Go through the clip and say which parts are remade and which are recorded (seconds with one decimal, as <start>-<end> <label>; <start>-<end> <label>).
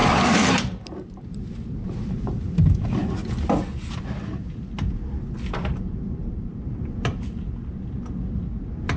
0.0-1.9 remade; 1.9-5.6 recorded; 5.6-7.7 remade; 7.7-9.0 recorded